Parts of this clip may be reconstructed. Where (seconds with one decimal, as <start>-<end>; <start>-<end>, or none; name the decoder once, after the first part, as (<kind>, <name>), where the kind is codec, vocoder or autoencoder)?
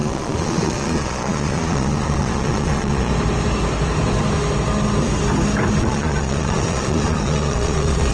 0.0-3.1 (vocoder, Vocos); 5.8-8.1